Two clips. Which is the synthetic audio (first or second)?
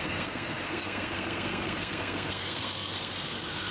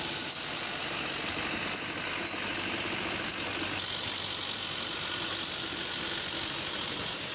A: first